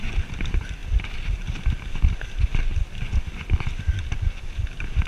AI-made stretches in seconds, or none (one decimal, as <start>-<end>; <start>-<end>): none